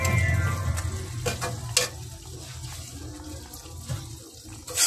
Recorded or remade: recorded